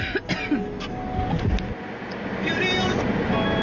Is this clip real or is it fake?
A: real